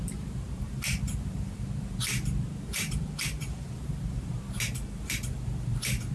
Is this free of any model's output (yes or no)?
no